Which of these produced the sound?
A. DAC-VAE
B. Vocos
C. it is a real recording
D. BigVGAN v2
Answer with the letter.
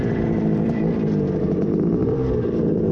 D